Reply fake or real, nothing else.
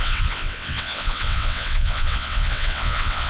fake